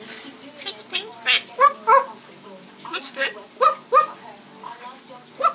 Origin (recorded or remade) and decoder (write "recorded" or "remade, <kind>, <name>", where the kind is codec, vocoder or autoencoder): recorded